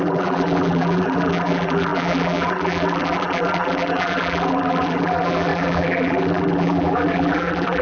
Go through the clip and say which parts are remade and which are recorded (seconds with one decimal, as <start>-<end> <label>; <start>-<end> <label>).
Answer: 0.0-7.8 remade